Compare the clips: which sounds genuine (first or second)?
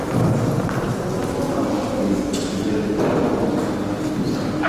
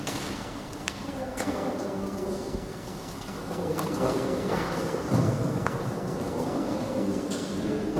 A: first